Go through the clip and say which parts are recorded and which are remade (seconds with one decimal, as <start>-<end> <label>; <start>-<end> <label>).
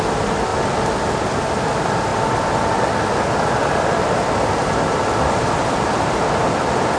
0.0-7.0 recorded